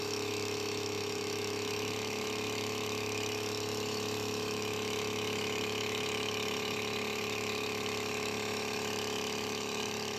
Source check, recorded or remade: remade